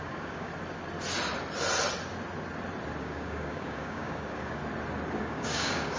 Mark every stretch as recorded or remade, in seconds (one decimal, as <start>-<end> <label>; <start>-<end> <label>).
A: 0.0-0.5 remade; 0.5-3.0 recorded; 3.0-4.6 remade; 4.6-5.2 recorded; 5.2-6.0 remade